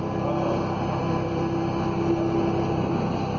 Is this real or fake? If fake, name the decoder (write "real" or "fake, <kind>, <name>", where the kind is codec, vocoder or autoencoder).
real